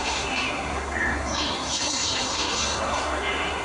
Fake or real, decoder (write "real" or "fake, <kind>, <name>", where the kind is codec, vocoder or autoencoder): fake, codec, SNAC